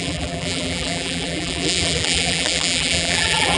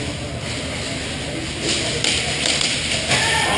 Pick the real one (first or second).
second